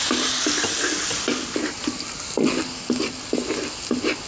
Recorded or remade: recorded